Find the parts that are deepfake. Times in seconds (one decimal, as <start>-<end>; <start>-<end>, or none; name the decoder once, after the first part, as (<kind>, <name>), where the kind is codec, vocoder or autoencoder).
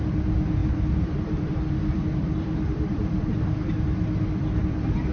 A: 0.6-3.7 (vocoder, BigVGAN v2)